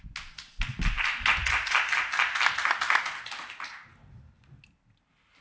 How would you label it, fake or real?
real